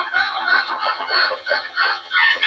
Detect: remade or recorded remade